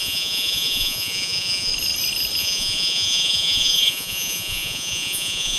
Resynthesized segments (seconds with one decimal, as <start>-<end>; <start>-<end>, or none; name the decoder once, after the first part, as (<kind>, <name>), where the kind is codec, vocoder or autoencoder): 0.0-1.7 (vocoder, Vocos); 2.4-5.6